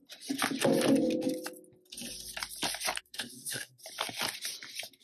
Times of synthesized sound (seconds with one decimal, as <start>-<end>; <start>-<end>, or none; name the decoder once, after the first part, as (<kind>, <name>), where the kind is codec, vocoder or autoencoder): 3.0-3.8 (codec, SNAC)